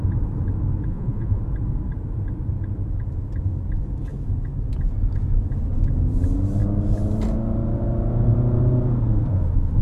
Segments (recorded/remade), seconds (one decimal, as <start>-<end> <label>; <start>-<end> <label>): 0.0-0.9 recorded; 0.9-1.4 remade; 1.4-9.8 recorded